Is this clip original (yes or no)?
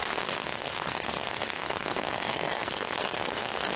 no